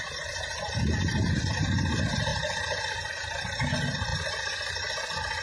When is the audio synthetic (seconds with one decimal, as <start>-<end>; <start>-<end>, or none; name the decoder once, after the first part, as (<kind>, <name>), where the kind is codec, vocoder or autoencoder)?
none